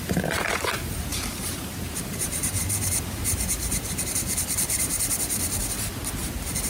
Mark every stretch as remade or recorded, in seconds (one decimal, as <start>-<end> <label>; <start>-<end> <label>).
0.0-1.1 recorded; 1.1-5.1 remade; 5.1-6.7 recorded